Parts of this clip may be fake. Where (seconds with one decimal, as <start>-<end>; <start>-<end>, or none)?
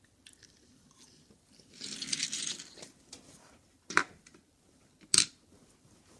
0.6-2.9